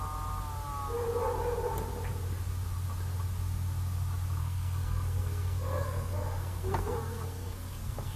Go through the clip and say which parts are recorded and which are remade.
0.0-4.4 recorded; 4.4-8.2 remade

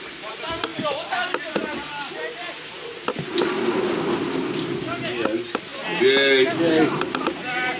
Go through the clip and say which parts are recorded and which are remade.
0.0-0.7 recorded; 0.7-1.3 remade; 1.3-7.8 recorded